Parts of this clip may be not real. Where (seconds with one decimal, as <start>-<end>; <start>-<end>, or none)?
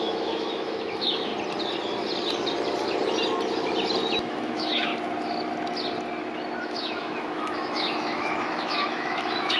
0.0-1.3; 4.1-4.9; 6.6-9.6